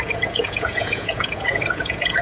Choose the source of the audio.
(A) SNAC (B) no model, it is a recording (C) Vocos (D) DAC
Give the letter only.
C